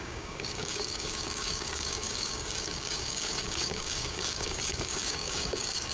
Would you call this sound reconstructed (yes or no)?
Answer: yes